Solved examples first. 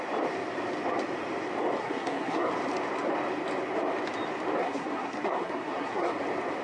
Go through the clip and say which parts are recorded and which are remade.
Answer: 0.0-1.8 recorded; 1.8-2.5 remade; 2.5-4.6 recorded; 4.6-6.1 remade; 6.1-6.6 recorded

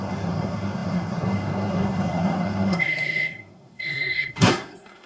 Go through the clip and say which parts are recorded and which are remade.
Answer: 0.0-5.1 remade

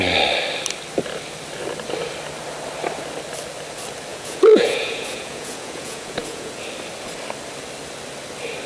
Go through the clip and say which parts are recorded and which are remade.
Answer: 0.0-4.1 recorded; 4.1-6.5 remade; 6.5-8.7 recorded

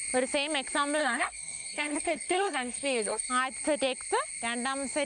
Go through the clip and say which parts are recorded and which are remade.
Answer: 0.0-1.0 recorded; 1.0-3.3 remade; 3.3-5.1 recorded

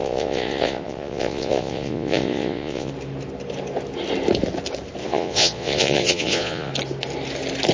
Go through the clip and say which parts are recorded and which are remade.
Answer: 0.0-2.9 remade; 2.9-5.0 recorded; 5.0-6.7 remade; 6.7-7.7 recorded

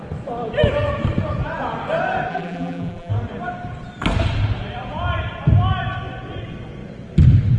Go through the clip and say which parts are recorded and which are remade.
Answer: 0.0-2.3 recorded; 2.3-3.1 remade; 3.1-7.6 recorded

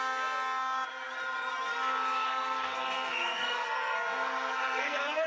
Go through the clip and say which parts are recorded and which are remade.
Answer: 0.0-1.7 recorded; 1.7-5.3 remade